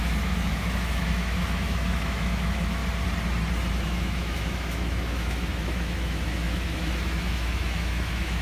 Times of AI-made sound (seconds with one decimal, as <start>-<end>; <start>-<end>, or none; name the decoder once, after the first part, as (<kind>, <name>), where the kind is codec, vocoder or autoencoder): 0.0-2.8 (autoencoder, DAC-VAE); 3.7-8.4

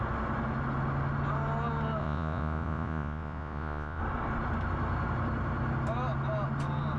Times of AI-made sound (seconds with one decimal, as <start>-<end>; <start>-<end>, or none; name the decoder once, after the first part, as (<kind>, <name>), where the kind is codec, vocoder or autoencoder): 2.0-4.0 (vocoder, Vocos)